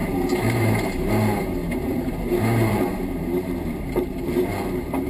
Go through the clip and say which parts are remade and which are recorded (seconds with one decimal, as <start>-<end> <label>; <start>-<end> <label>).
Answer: 0.0-1.1 remade; 1.1-1.6 recorded; 1.6-2.2 remade; 2.2-2.7 recorded; 2.7-5.1 remade